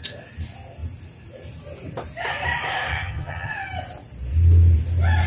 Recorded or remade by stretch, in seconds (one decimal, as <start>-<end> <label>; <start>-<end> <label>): 0.0-2.9 recorded; 2.9-3.5 remade; 3.5-5.3 recorded